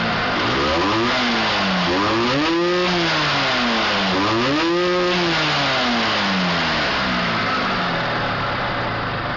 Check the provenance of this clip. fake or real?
real